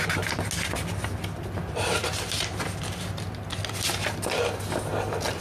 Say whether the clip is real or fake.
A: real